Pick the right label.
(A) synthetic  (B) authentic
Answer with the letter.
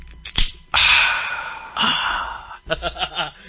B